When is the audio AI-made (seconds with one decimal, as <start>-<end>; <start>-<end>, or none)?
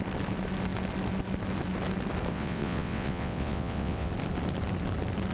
2.3-4.1